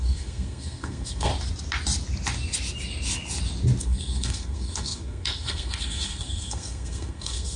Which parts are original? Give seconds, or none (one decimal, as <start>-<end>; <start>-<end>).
1.3-3.8